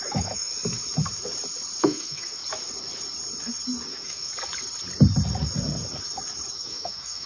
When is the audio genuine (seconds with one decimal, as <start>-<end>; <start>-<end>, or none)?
0.5-1.8; 2.4-3.9; 4.3-6.5